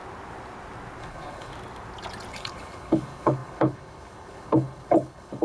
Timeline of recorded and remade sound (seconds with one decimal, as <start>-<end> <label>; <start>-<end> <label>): 0.0-1.0 recorded; 1.0-1.5 remade; 1.5-2.3 recorded; 2.3-5.4 remade